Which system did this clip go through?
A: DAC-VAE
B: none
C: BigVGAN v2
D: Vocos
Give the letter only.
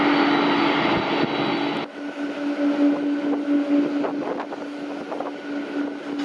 B